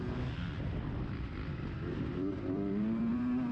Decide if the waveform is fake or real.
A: fake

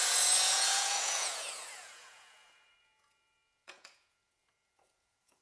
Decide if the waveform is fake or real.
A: fake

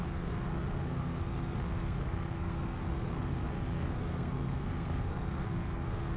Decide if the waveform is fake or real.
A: fake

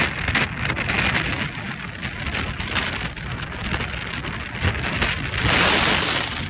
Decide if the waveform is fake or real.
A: real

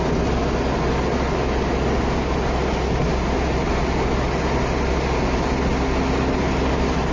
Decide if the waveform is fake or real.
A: real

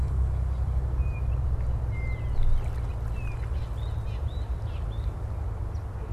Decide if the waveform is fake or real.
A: real